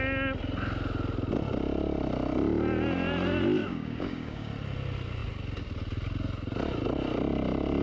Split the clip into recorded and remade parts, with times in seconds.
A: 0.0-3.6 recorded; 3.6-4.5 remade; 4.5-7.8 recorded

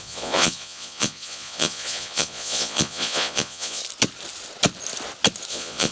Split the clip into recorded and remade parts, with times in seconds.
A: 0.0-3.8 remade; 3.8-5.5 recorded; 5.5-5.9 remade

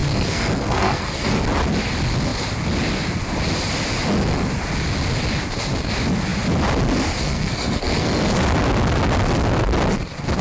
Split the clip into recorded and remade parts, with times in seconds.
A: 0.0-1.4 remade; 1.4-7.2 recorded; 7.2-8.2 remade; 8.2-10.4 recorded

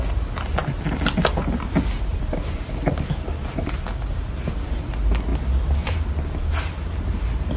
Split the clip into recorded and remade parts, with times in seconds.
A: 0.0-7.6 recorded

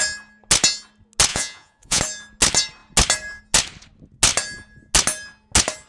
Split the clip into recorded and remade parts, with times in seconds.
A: 0.0-1.3 recorded; 1.3-2.0 remade; 2.0-5.9 recorded

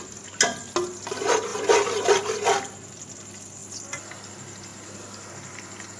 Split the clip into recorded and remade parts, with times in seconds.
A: 0.0-4.7 recorded; 4.7-5.3 remade; 5.3-6.0 recorded

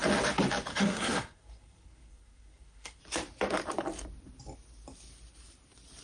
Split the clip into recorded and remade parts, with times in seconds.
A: 0.0-0.7 recorded; 0.7-3.0 remade; 3.0-6.0 recorded

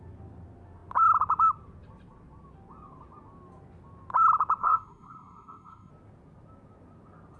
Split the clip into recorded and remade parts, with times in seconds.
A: 0.0-4.6 recorded; 4.6-5.9 remade; 5.9-7.4 recorded